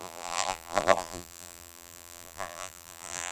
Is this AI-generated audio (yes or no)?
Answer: yes